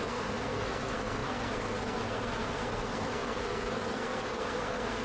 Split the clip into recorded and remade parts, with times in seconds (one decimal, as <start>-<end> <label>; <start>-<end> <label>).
0.0-5.0 remade

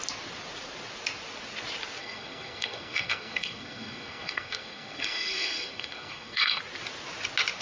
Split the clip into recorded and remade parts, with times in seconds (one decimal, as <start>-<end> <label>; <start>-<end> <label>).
0.0-2.0 recorded; 2.0-6.6 remade; 6.6-7.6 recorded